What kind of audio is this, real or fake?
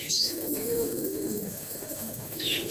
fake